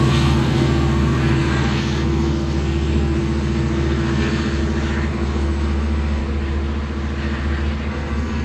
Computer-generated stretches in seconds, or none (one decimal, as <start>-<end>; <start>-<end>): 0.0-4.6; 5.1-6.2; 7.9-8.4